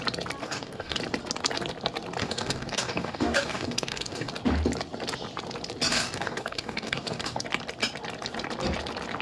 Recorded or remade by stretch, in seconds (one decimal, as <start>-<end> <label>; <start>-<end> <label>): 0.0-0.4 recorded; 0.4-1.0 remade; 1.0-2.2 recorded; 2.2-4.3 remade; 4.3-5.9 recorded; 5.9-7.4 remade; 7.4-9.2 recorded